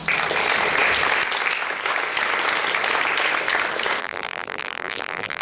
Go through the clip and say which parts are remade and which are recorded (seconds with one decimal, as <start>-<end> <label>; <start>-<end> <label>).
0.0-4.0 recorded; 4.0-5.4 remade